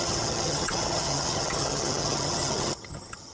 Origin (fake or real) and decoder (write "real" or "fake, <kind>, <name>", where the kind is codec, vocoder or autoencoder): fake, vocoder, HiFi-GAN